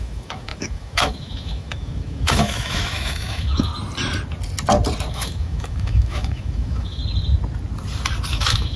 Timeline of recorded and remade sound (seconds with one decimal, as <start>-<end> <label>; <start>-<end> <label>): 0.0-3.7 remade; 3.7-5.1 recorded; 5.1-7.0 remade; 7.0-8.3 recorded; 8.3-8.8 remade